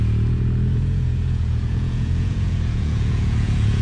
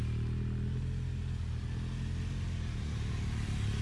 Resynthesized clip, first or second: first